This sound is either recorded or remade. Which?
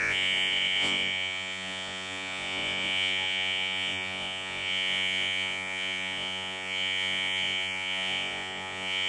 remade